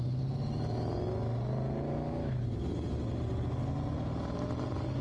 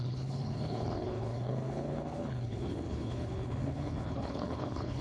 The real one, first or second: first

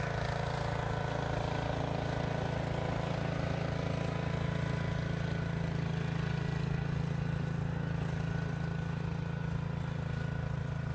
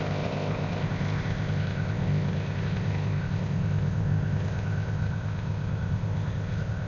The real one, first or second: first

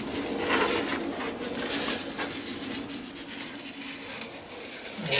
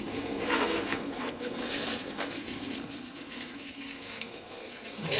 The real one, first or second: first